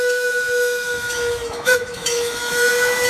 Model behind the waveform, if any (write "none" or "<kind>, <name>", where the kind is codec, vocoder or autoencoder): autoencoder, DAC-VAE